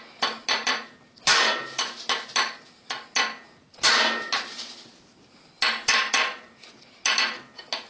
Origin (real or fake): real